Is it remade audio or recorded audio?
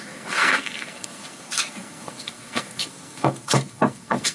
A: remade